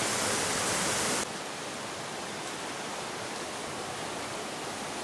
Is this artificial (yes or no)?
no